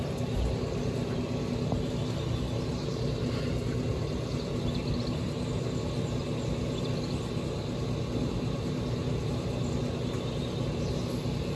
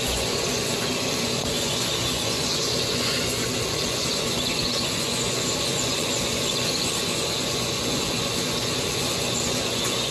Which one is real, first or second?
first